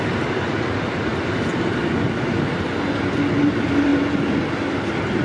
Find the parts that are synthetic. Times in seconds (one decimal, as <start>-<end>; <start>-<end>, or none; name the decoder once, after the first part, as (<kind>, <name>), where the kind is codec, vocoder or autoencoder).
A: none